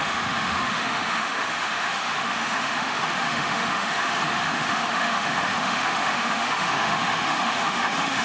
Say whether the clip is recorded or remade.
remade